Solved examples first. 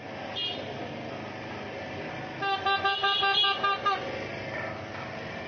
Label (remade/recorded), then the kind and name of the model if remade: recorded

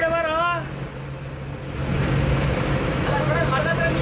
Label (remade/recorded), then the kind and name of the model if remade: recorded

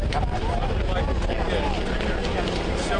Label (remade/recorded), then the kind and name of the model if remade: recorded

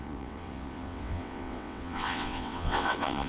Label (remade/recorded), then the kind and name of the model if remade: remade, vocoder, WaveNeXt